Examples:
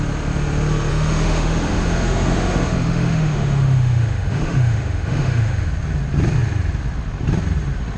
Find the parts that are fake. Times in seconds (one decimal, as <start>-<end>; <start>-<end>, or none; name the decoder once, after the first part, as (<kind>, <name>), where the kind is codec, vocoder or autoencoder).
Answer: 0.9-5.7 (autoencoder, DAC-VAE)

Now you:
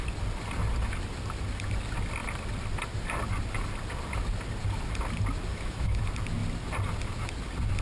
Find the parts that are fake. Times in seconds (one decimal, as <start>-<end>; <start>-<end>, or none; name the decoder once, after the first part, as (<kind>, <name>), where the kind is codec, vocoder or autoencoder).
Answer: 5.5-6.0 (autoencoder, DAC-VAE)

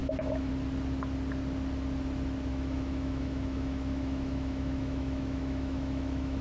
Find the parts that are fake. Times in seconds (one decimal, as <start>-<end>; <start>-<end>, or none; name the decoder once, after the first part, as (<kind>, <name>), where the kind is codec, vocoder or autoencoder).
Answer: 0.0-0.5 (autoencoder, DAC-VAE); 2.5-6.4